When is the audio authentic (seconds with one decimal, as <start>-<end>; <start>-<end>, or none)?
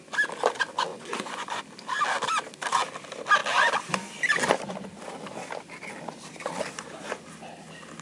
0.0-0.9; 1.6-8.0